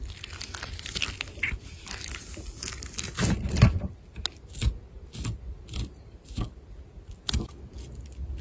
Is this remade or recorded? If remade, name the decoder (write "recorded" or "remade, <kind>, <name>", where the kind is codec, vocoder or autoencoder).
recorded